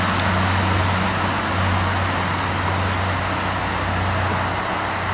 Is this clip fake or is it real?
real